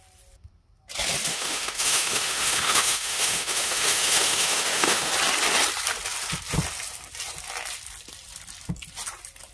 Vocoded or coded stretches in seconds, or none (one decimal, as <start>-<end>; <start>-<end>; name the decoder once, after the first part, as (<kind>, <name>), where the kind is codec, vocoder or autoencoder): 1.3-5.1 (autoencoder, DAC-VAE)